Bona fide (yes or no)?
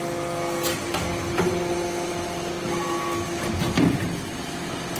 yes